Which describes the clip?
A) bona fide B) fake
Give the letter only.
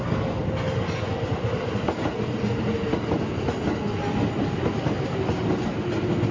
A